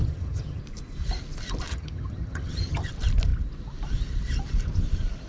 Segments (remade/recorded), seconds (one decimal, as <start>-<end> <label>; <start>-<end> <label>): 0.0-0.6 remade; 0.6-1.7 recorded; 1.7-2.9 remade; 2.9-5.3 recorded